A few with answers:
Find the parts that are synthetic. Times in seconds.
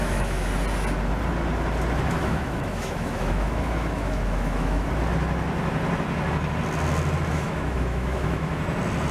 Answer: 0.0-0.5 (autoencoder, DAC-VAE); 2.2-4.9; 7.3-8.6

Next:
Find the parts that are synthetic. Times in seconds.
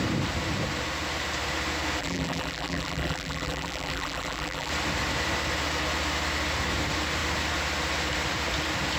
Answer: 2.0-4.7 (vocoder, BigVGAN v2)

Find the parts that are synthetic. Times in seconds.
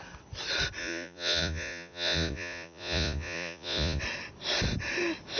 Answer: 0.8-4.0 (vocoder, Vocos)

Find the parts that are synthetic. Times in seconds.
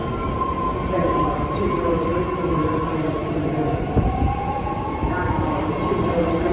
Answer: none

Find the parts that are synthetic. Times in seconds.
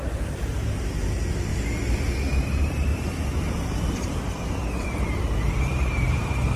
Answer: 0.0-1.5 (vocoder, BigVGAN v2); 2.4-6.6